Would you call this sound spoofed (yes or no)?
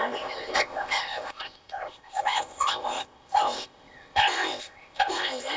yes